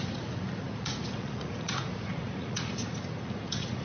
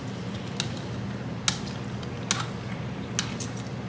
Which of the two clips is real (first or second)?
second